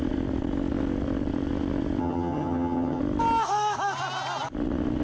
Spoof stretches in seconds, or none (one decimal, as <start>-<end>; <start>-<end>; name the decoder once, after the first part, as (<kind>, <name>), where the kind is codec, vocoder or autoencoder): 2.0-3.0 (vocoder, HiFi-GAN)